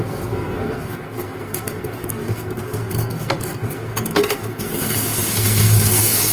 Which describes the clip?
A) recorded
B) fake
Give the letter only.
B